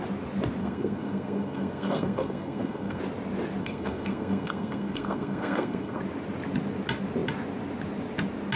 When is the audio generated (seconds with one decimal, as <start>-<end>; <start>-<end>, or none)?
0.6-3.0; 3.6-6.0